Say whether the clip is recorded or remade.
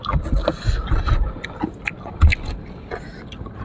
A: recorded